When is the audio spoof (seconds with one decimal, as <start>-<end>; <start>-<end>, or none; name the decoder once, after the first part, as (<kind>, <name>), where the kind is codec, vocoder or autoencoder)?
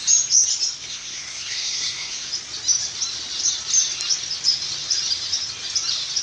0.9-2.3 (codec, SNAC)